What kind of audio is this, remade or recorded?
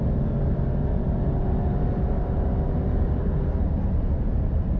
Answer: remade